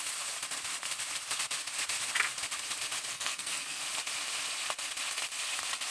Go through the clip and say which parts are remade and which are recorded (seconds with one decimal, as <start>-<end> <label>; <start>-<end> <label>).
0.0-3.1 recorded; 3.1-3.8 remade; 3.8-5.9 recorded

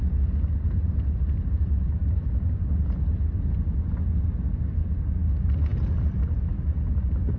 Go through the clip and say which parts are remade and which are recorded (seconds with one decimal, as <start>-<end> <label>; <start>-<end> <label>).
0.0-7.4 recorded

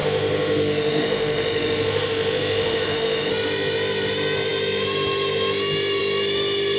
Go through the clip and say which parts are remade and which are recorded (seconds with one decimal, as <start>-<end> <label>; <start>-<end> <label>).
0.0-3.3 remade; 3.3-6.8 recorded

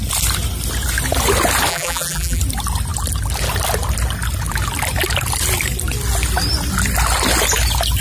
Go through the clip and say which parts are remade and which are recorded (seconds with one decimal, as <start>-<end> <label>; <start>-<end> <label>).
0.0-1.7 recorded; 1.7-2.4 remade; 2.4-8.0 recorded

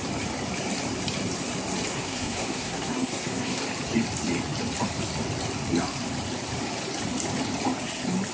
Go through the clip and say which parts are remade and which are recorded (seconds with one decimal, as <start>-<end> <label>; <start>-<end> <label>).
0.0-1.9 recorded; 1.9-3.6 remade; 3.6-8.3 recorded

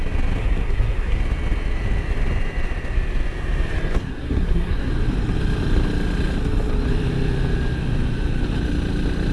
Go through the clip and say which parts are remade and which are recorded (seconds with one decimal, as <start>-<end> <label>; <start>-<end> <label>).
0.0-0.4 recorded; 0.4-1.2 remade; 1.2-4.0 recorded; 4.0-4.9 remade; 4.9-9.3 recorded

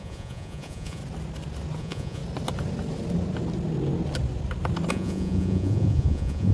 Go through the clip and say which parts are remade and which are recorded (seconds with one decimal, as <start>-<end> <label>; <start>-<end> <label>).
0.0-1.0 remade; 1.0-1.8 recorded; 1.8-2.2 remade; 2.2-4.9 recorded; 4.9-6.5 remade

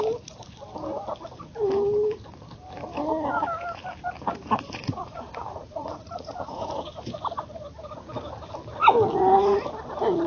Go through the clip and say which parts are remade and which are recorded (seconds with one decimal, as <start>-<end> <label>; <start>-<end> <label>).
0.0-4.8 recorded; 4.8-6.7 remade; 6.7-10.3 recorded